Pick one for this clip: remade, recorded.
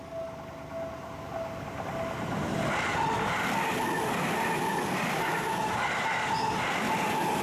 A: recorded